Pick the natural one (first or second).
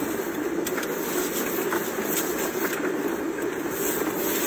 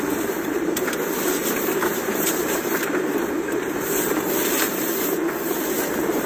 first